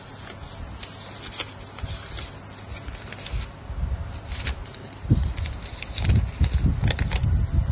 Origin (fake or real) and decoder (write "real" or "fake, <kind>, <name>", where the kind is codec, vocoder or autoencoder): real